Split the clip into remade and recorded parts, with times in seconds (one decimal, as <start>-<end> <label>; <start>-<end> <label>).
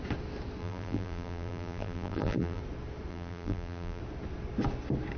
0.0-0.6 recorded; 0.6-2.6 remade; 2.6-3.1 recorded; 3.1-4.0 remade; 4.0-5.2 recorded